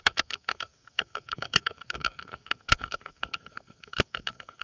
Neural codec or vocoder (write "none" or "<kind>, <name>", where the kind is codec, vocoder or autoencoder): codec, SNAC